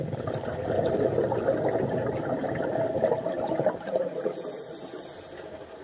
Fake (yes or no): no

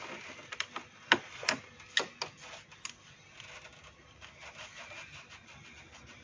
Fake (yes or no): no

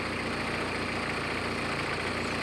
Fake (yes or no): no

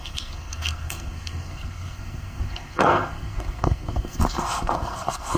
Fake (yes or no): yes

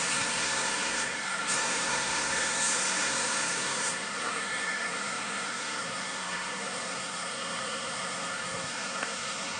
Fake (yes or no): yes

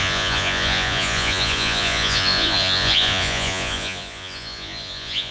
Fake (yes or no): yes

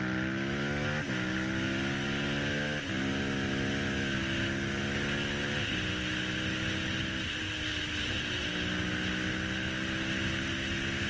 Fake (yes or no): no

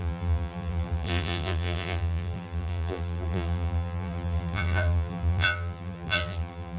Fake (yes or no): yes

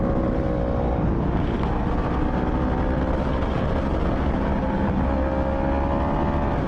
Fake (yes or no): no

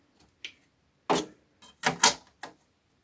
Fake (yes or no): no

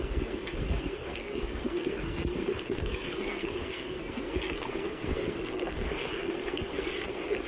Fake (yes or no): yes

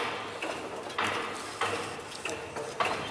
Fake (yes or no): no